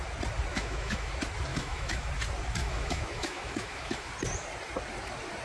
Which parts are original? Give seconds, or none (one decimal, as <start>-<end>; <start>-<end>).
0.0-0.5; 1.1-1.5; 2.1-2.6; 4.1-5.4